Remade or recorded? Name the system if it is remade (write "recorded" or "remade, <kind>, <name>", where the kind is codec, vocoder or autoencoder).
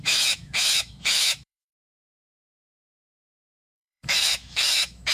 remade, autoencoder, DAC-VAE